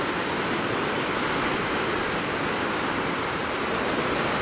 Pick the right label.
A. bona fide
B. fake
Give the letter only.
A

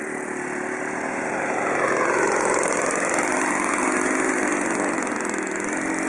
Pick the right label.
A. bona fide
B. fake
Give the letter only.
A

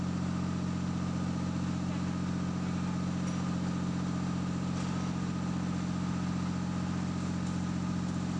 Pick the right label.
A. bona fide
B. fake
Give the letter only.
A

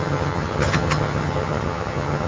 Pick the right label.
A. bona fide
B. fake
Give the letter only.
B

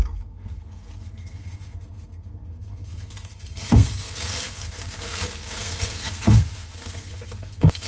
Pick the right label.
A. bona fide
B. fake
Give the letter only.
B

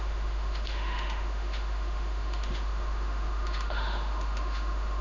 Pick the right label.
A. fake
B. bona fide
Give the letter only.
A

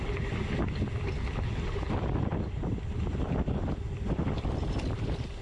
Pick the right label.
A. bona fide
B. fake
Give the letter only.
A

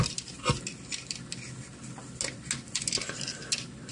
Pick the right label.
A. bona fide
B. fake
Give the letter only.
A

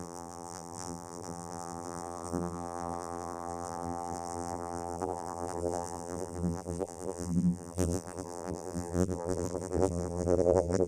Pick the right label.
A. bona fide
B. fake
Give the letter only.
B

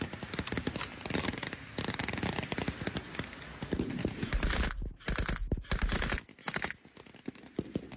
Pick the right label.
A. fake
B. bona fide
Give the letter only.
B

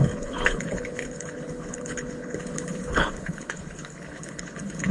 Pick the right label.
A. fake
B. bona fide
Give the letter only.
A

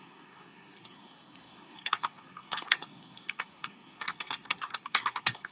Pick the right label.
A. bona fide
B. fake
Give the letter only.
B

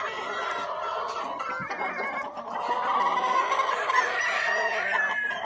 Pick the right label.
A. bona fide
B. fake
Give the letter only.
A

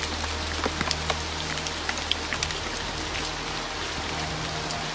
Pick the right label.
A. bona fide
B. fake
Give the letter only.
A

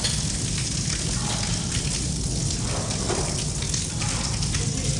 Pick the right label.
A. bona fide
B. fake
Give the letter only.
A